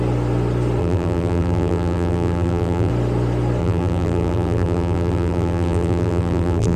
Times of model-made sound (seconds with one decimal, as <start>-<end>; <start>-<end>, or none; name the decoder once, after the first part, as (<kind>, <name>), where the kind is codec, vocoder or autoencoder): 0.8-2.9 (vocoder, BigVGAN v2); 3.6-6.8